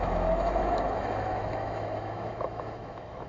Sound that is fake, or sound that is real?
fake